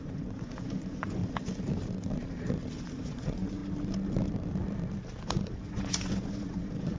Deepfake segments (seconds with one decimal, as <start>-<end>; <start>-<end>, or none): 0.0-1.2; 2.8-3.6; 5.3-7.0